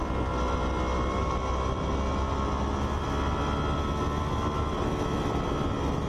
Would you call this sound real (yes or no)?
yes